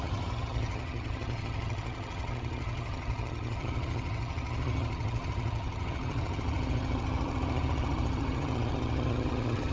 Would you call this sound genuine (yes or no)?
no